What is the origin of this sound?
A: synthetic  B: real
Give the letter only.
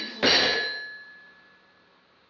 B